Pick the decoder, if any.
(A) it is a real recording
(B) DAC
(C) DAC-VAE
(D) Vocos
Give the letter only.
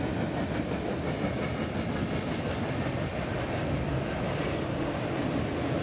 A